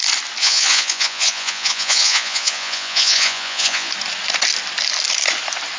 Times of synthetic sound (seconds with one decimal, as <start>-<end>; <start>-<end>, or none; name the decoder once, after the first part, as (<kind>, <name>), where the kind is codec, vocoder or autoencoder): 0.4-3.9 (vocoder, Vocos)